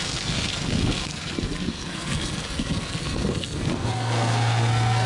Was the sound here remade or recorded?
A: remade